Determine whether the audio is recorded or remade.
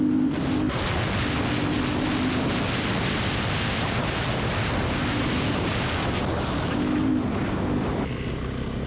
recorded